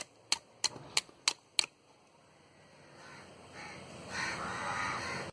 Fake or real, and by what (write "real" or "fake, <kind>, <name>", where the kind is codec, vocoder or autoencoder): real